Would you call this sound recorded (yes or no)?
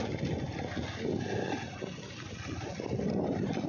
yes